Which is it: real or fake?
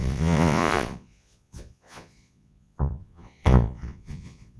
fake